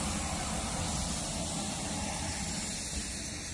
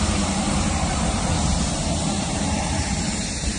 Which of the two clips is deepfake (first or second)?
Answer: second